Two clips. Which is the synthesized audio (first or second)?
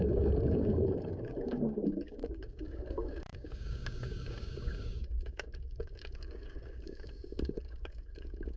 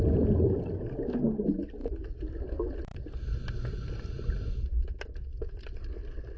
first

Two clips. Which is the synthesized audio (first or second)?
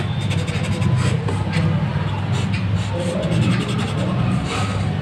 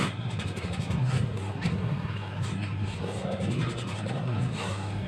second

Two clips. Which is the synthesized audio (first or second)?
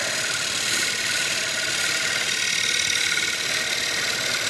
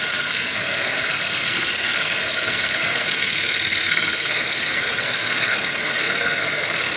second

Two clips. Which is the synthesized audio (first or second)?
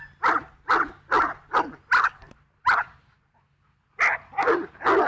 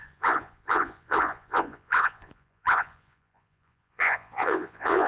second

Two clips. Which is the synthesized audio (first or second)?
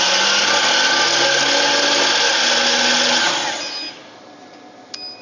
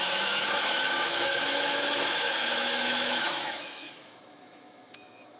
second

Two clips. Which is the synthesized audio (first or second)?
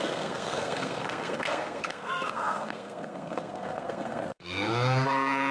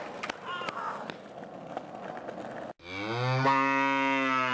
first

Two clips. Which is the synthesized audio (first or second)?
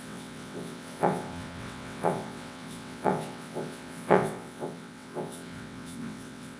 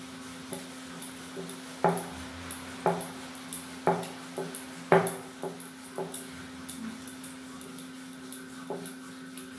first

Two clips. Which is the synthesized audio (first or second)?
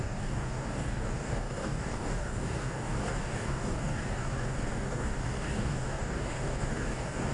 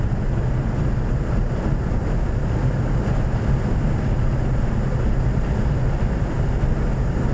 first